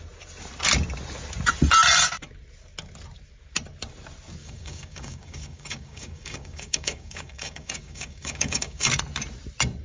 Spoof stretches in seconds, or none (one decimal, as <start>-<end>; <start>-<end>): 4.4-8.9